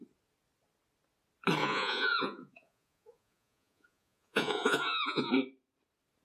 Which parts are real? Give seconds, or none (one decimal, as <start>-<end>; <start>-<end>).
0.0-1.6; 5.3-6.2